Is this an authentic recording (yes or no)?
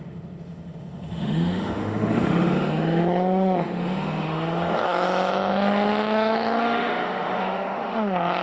no